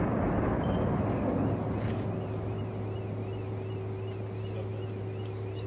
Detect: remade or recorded recorded